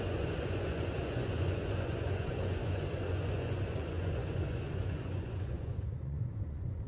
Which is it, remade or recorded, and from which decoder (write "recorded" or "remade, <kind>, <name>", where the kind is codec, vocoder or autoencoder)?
remade, vocoder, Vocos